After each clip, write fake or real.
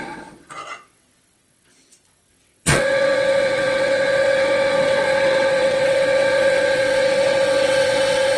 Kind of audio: fake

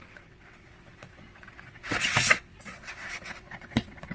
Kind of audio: fake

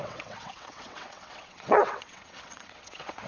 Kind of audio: fake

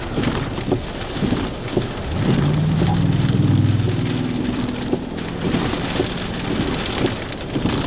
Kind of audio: real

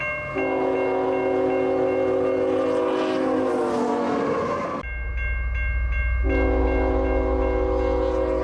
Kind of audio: real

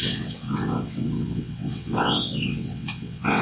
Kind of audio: fake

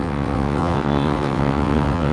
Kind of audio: fake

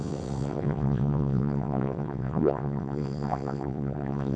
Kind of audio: fake